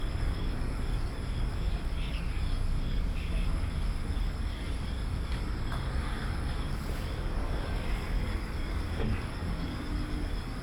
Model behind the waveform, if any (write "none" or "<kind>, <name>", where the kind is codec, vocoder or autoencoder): codec, DAC